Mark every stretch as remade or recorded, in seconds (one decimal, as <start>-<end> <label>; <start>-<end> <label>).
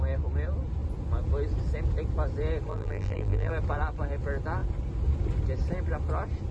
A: 0.0-2.7 recorded; 2.7-3.5 remade; 3.5-6.5 recorded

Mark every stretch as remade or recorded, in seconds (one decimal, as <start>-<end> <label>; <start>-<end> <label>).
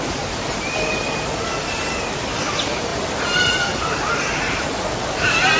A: 0.0-5.6 recorded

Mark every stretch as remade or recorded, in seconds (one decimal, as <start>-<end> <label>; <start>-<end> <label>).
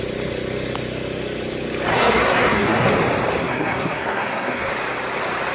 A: 0.0-1.9 recorded; 1.9-2.9 remade; 2.9-3.4 recorded; 3.4-4.7 remade; 4.7-5.5 recorded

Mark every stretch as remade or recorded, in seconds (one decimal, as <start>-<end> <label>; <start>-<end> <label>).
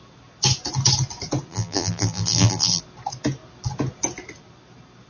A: 0.0-1.5 recorded; 1.5-2.8 remade; 2.8-5.1 recorded